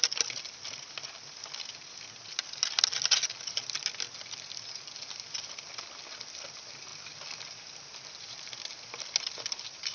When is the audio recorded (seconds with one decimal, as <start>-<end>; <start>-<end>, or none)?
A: 0.0-9.9